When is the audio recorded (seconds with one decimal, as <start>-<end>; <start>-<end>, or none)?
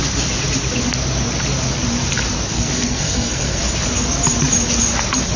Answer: 0.0-2.5; 3.6-5.4